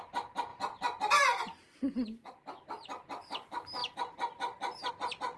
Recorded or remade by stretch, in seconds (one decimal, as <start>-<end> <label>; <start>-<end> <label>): 0.0-5.4 recorded